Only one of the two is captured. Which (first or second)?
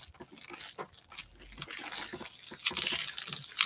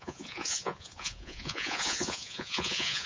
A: first